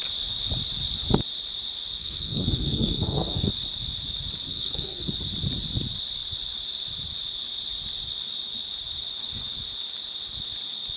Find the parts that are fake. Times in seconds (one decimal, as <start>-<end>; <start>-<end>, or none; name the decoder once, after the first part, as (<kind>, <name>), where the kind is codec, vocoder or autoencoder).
2.0-3.5 (codec, SNAC); 4.5-5.1